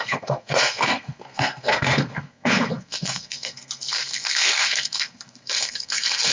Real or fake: fake